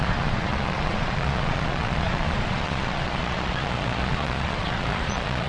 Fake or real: fake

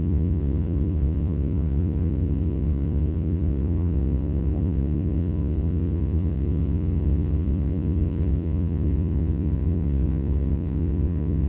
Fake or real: fake